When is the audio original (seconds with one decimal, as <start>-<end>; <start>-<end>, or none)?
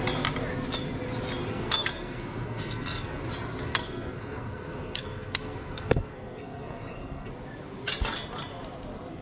0.0-1.5; 3.2-3.7; 7.3-9.2